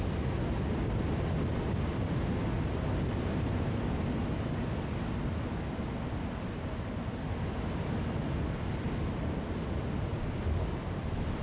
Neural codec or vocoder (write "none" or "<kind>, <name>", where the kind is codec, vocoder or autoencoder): none